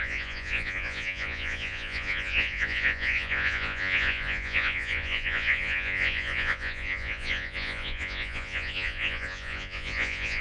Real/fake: fake